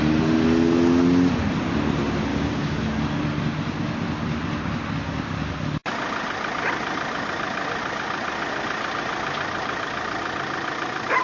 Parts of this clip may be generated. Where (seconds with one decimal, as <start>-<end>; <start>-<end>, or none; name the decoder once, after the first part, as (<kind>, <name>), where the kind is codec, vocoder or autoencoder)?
2.3-2.8 (codec, DAC)